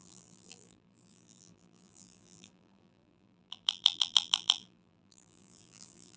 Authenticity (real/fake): fake